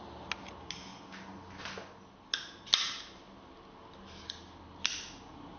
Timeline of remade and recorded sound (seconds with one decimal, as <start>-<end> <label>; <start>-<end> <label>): 0.0-5.6 recorded